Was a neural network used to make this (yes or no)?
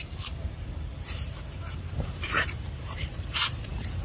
yes